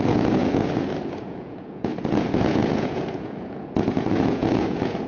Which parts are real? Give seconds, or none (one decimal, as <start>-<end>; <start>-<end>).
none